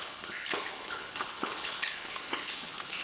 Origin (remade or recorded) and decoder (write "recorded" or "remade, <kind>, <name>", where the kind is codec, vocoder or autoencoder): remade, codec, HILCodec